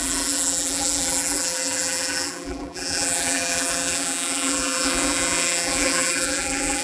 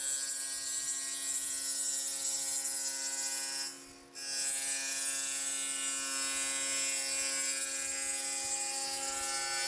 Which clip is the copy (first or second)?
first